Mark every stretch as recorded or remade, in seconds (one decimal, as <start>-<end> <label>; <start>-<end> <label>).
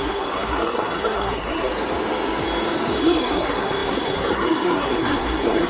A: 0.0-1.7 remade; 1.7-3.0 recorded; 3.0-5.7 remade